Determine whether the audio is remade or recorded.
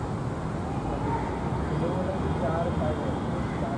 recorded